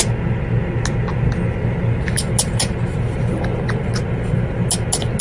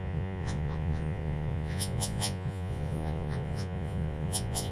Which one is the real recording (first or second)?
first